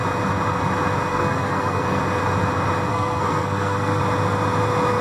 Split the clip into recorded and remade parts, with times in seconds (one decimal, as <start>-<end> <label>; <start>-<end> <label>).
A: 0.0-1.1 recorded; 1.1-2.0 remade; 2.0-2.9 recorded; 2.9-4.0 remade; 4.0-5.0 recorded